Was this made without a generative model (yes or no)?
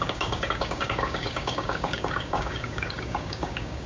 no